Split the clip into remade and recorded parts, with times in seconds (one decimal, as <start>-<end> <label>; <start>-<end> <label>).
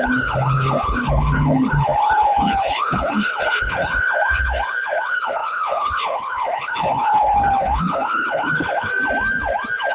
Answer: 0.0-8.9 remade; 8.9-9.9 recorded